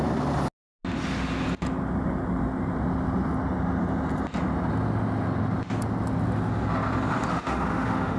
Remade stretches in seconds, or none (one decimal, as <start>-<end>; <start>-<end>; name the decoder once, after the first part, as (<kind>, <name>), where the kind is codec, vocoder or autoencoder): 7.3-8.2 (autoencoder, DAC-VAE)